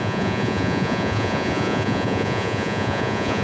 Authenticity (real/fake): fake